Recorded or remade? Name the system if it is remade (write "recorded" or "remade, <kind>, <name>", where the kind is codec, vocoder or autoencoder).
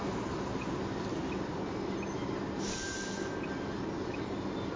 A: recorded